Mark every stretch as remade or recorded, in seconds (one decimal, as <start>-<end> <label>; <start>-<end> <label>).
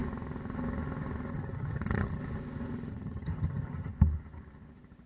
0.0-1.3 recorded; 1.3-2.2 remade; 2.2-2.9 recorded; 2.9-3.9 remade; 3.9-5.1 recorded